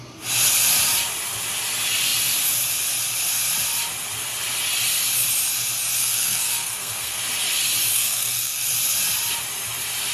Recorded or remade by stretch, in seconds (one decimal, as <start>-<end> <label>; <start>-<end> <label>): 0.0-6.0 recorded; 6.0-7.2 remade; 7.2-7.9 recorded; 7.9-8.7 remade; 8.7-10.1 recorded